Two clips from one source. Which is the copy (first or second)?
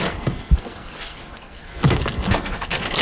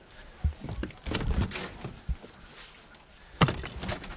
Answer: first